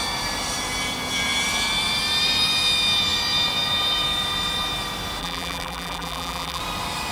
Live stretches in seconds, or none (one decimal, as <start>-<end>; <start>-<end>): 0.0-5.2; 6.6-7.1